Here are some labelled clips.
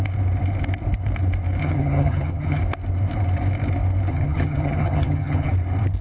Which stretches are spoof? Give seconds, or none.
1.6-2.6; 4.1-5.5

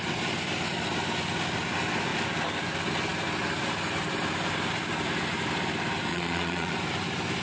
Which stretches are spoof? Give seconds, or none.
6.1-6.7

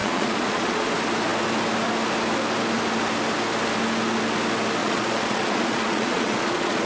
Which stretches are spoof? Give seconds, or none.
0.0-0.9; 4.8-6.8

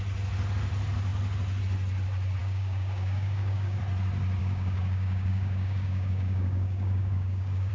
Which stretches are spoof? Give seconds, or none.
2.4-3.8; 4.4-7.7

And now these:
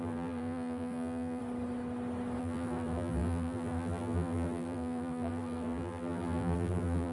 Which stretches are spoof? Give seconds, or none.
0.0-1.4; 2.4-7.1